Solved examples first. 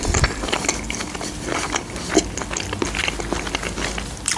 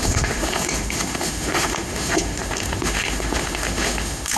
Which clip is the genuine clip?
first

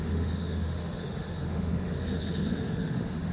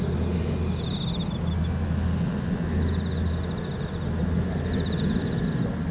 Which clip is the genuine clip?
second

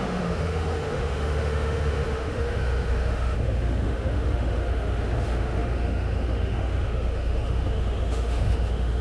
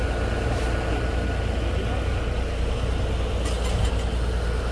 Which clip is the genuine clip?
second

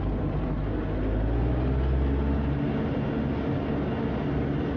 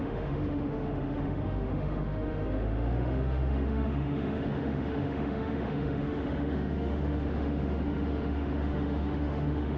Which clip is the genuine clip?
first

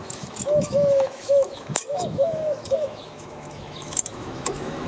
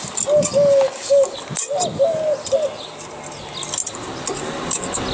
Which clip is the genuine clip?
second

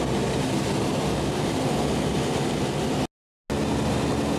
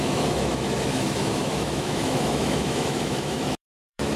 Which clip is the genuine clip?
first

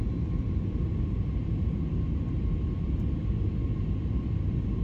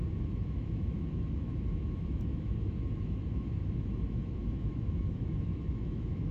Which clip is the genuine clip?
first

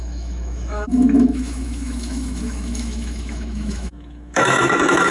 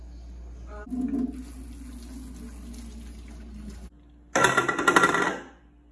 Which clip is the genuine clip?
second